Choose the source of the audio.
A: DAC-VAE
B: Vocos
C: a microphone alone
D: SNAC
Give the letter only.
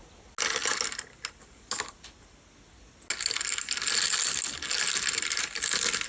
C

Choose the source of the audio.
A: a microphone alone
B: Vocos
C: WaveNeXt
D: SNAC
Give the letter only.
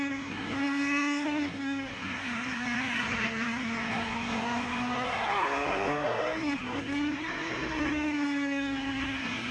D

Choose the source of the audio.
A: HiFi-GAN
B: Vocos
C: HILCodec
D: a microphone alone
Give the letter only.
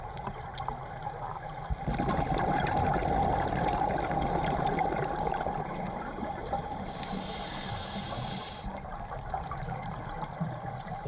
D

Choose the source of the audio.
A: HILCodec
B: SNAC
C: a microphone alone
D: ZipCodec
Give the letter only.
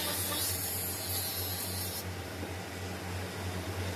C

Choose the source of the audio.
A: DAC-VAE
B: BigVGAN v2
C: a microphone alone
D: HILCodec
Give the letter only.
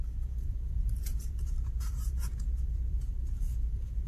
B